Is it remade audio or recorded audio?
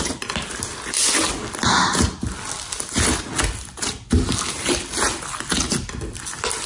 recorded